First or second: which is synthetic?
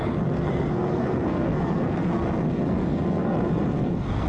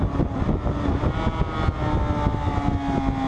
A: first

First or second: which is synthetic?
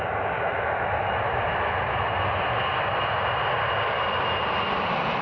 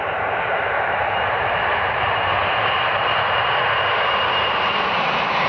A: second